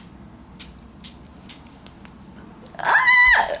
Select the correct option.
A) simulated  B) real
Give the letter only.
B